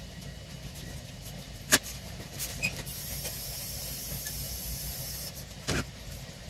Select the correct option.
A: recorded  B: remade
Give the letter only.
B